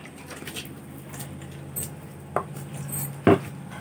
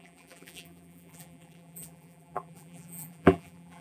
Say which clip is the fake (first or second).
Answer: second